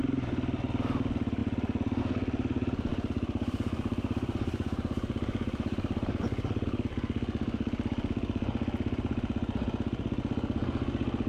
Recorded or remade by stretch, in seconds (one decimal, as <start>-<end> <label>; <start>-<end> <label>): 0.0-2.9 recorded; 2.9-6.2 remade; 6.2-11.3 recorded